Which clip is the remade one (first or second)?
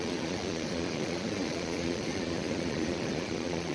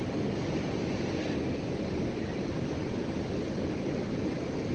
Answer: first